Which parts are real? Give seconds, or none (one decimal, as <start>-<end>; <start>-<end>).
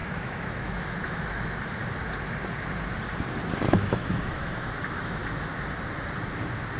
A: 1.8-3.6; 5.2-6.8